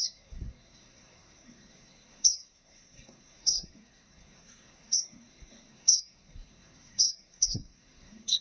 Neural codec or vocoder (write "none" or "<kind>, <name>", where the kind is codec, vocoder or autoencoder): codec, SNAC